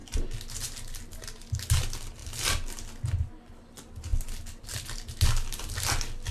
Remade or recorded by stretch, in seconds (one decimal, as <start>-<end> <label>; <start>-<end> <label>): 0.0-6.3 recorded